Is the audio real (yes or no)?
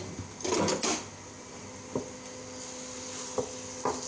yes